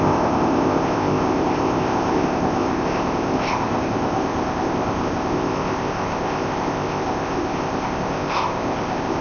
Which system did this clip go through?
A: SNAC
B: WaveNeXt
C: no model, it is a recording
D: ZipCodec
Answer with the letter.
D